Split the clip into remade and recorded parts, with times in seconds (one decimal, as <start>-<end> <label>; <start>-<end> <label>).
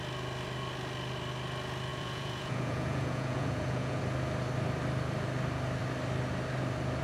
0.0-1.9 recorded; 1.9-4.0 remade; 4.0-7.0 recorded